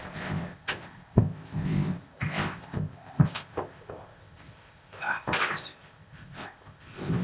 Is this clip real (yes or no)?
no